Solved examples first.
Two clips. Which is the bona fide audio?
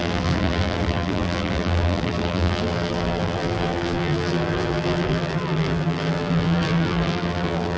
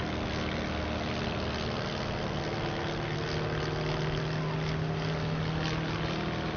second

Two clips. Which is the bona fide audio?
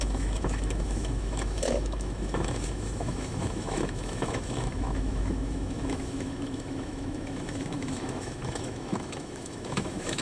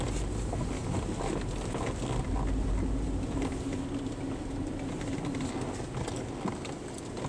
second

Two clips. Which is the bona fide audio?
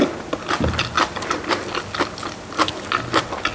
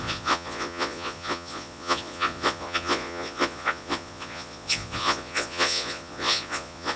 first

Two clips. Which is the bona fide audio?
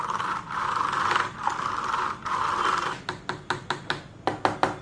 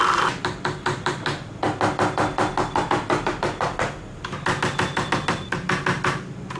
second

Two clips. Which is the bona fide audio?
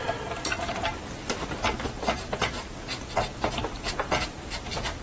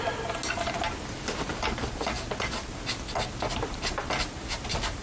second